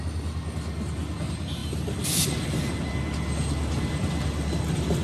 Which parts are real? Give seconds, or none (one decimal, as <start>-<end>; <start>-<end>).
0.0-5.0